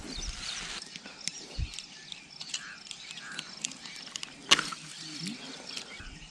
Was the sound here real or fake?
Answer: real